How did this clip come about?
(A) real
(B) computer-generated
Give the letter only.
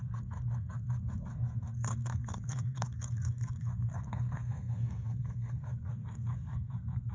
B